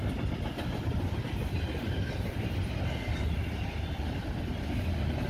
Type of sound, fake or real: real